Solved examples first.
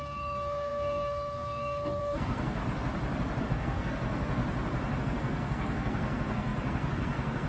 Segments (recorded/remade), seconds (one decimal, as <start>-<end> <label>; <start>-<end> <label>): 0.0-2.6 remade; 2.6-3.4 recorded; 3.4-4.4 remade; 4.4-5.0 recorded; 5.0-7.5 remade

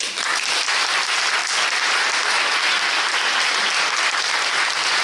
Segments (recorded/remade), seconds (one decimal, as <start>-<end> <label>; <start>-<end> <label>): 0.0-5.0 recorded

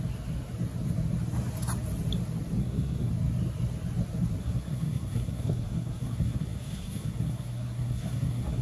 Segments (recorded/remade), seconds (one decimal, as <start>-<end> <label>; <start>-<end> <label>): 0.0-2.6 recorded; 2.6-3.1 remade; 3.1-4.4 recorded; 4.4-8.6 remade